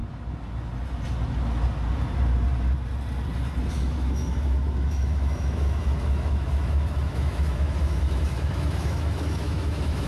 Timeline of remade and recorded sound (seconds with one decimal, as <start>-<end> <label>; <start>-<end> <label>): 0.0-3.7 recorded; 3.7-10.1 remade